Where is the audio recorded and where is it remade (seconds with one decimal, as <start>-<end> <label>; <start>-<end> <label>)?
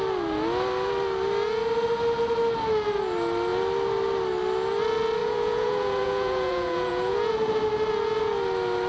0.0-5.2 recorded; 5.2-7.3 remade; 7.3-8.9 recorded